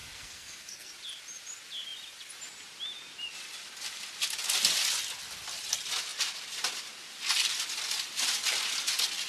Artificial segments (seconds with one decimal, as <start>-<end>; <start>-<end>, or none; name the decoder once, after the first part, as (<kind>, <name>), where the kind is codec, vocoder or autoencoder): 0.0-0.9 (codec, SNAC)